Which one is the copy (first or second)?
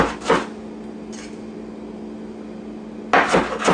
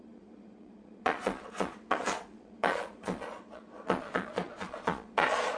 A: second